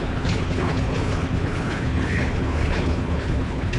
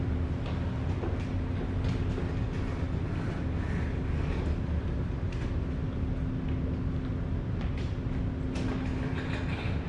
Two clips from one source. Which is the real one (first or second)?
second